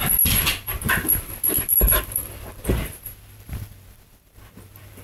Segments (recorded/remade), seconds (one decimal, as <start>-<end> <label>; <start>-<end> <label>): 0.0-5.0 remade